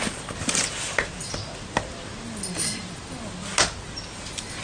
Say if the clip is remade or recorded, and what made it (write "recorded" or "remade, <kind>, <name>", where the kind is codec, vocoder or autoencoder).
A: recorded